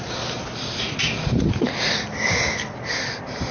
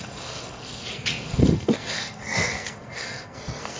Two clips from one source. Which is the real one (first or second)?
first